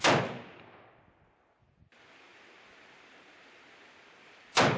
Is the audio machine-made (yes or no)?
no